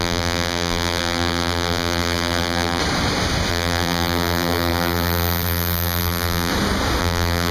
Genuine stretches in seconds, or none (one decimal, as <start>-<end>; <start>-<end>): 2.8-3.5; 6.5-7.0